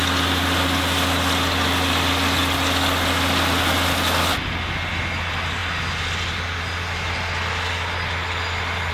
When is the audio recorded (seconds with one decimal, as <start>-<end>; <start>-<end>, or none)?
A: 0.0-8.9